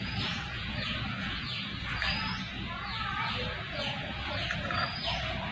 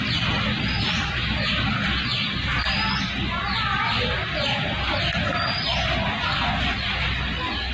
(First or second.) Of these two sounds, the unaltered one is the second